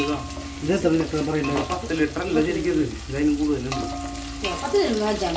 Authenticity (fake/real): real